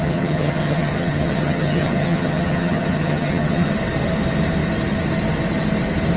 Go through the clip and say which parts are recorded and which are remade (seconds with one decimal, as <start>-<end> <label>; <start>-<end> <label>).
0.0-3.7 remade; 3.7-6.2 recorded